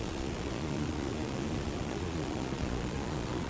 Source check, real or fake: fake